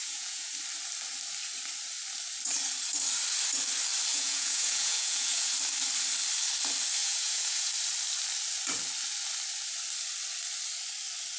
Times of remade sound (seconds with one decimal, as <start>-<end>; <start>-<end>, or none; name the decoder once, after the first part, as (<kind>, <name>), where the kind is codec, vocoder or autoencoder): 0.0-0.5 (vocoder, Vocos); 4.1-5.5; 7.0-7.7